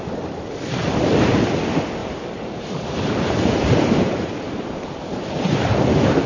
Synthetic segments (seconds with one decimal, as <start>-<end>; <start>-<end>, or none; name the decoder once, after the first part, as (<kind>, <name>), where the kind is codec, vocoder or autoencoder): 2.0-5.8 (vocoder, BigVGAN v2)